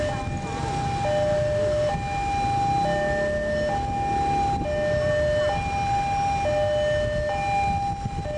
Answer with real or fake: real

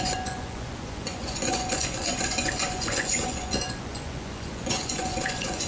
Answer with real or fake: fake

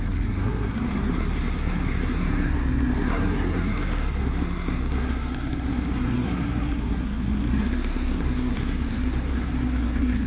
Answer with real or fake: fake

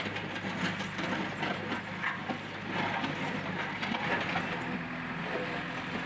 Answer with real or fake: real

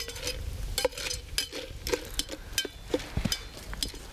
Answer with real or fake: real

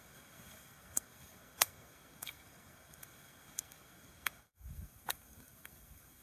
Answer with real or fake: fake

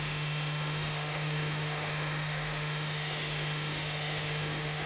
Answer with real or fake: fake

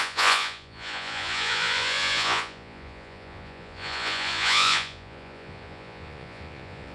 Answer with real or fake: fake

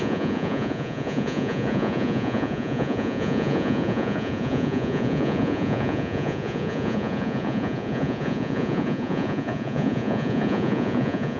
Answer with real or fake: fake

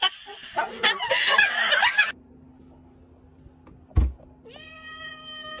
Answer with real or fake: real